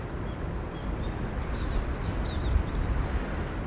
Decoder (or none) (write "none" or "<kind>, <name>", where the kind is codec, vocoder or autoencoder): none